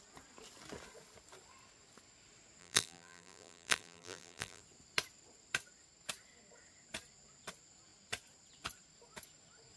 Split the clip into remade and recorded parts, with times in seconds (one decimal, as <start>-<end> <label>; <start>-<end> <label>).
0.0-2.6 recorded; 2.6-4.6 remade; 4.6-9.8 recorded